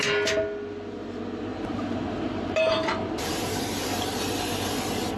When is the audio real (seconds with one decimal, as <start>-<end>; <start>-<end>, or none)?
0.0-1.5; 4.5-5.2